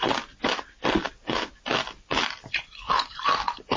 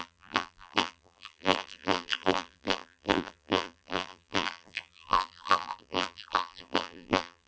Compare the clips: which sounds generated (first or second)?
second